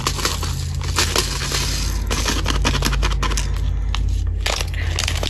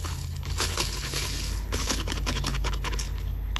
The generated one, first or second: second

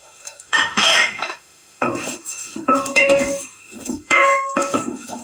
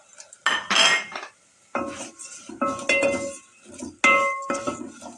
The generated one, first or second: first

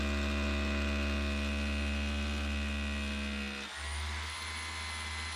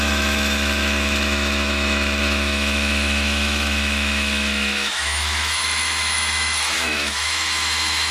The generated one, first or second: second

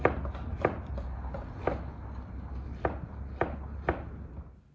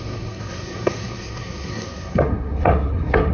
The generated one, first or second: second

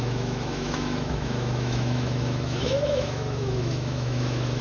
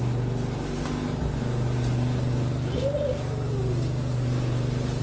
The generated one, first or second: first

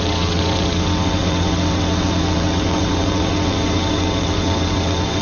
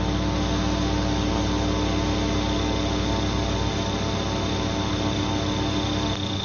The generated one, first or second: first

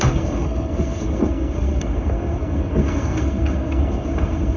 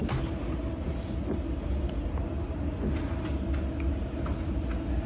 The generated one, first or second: first